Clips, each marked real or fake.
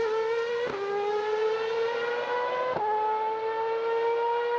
real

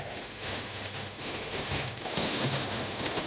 fake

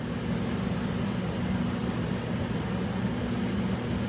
real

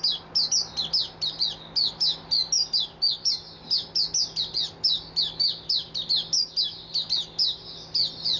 real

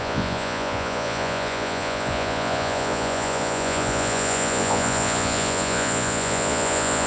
fake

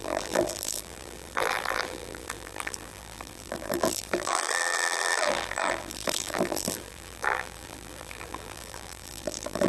fake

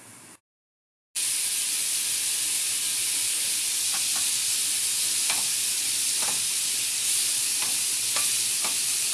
real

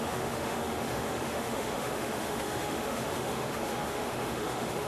fake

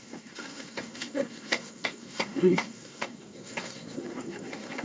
fake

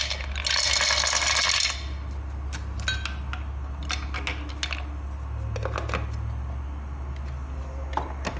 real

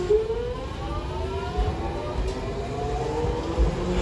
real